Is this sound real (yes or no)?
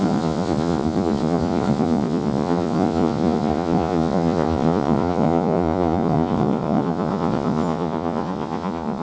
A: no